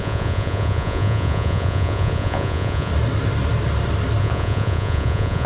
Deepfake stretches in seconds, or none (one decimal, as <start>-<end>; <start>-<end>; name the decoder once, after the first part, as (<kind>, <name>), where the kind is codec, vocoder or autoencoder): 0.0-2.9 (vocoder, Vocos); 4.2-5.5